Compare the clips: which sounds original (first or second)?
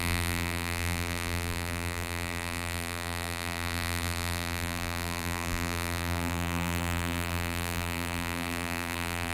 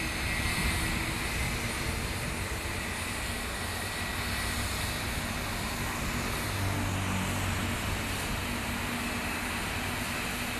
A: second